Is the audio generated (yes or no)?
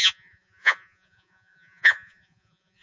yes